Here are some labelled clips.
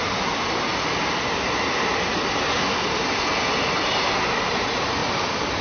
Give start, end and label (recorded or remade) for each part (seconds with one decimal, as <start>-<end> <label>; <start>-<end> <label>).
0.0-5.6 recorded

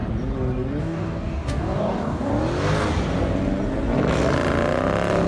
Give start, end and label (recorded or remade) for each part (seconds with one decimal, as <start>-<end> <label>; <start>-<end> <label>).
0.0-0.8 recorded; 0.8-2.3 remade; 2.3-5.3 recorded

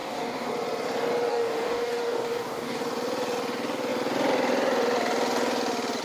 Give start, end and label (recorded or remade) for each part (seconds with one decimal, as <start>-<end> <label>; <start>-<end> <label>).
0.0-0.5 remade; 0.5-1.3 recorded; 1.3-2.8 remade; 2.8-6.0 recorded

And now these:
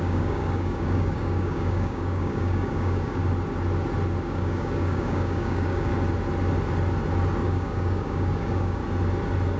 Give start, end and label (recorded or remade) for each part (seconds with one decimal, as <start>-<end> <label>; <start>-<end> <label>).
0.0-3.2 remade; 3.2-4.2 recorded; 4.2-5.9 remade; 5.9-7.4 recorded; 7.4-8.8 remade; 8.8-9.6 recorded

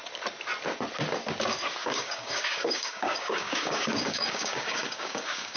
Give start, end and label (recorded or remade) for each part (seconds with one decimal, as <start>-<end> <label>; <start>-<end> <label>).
0.0-1.8 recorded; 1.8-5.6 remade

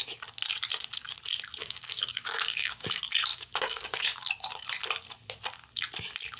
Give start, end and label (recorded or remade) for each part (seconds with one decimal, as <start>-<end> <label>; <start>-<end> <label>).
0.0-1.6 recorded; 1.6-2.9 remade; 2.9-3.3 recorded; 3.3-4.3 remade; 4.3-6.4 recorded

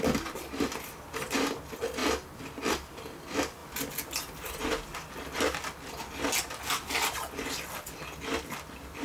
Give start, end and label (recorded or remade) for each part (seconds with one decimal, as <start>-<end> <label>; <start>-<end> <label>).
0.0-9.0 recorded